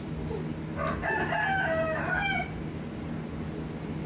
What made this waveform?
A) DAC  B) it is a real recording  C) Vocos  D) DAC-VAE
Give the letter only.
B